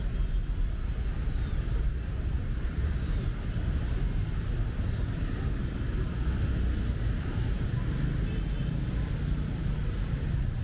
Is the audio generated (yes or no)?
no